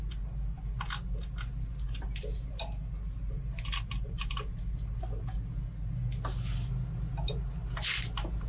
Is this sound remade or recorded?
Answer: recorded